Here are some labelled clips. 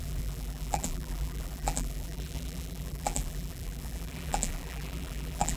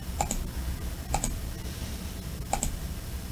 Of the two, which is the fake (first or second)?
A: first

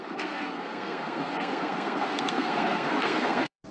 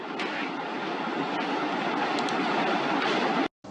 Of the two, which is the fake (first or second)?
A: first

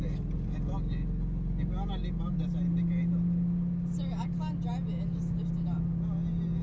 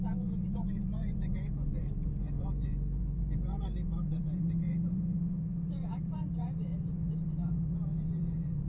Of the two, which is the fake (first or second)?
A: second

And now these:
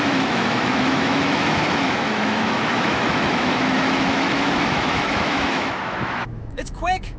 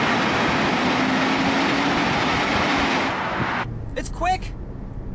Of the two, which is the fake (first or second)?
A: first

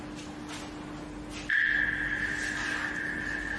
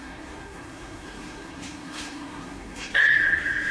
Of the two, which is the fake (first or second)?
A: second